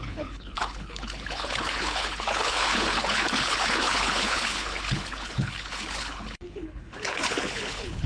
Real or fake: fake